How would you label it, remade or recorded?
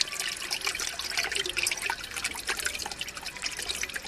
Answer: recorded